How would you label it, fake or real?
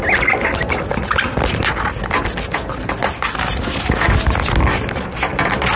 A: real